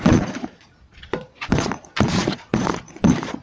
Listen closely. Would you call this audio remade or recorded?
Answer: remade